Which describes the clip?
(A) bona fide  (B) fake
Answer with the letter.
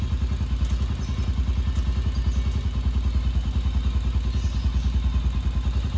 A